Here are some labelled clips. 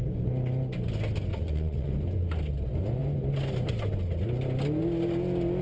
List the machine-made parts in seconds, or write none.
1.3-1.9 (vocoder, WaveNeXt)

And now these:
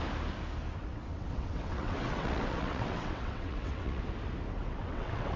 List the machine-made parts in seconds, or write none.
0.8-4.0 (vocoder, WaveNeXt); 4.6-5.4